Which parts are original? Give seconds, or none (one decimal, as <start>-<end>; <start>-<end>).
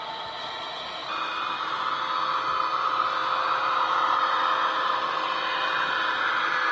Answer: 0.0-6.7